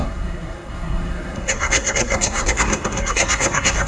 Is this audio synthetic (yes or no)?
yes